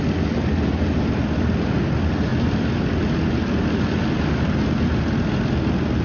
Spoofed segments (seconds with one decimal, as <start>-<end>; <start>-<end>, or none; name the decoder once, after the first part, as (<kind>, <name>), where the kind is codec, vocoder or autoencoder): none